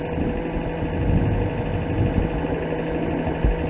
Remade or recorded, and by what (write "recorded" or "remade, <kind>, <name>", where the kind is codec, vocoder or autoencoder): recorded